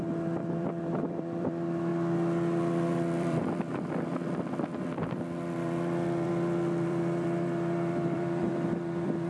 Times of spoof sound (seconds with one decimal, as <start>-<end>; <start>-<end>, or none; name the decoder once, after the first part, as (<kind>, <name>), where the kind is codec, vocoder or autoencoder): 0.0-1.9 (vocoder, BigVGAN v2); 2.6-9.3